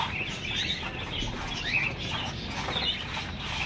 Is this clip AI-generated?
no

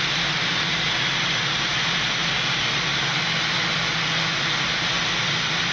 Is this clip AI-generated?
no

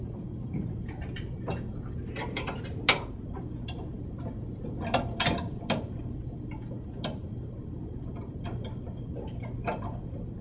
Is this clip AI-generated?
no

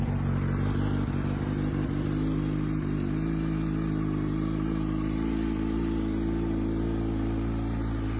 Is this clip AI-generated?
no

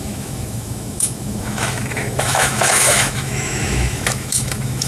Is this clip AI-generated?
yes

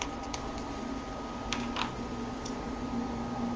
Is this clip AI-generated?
no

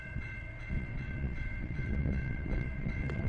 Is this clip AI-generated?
yes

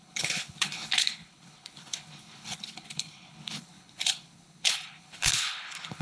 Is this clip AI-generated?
yes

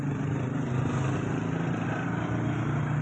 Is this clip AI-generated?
no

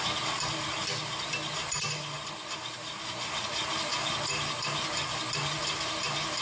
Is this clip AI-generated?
no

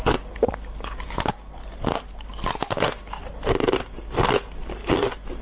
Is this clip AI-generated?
no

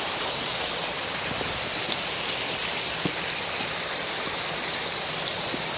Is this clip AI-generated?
no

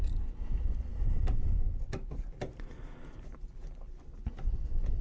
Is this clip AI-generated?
no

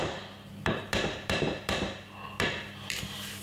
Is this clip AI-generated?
yes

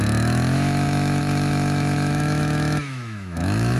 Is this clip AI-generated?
yes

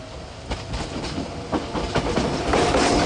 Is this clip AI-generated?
no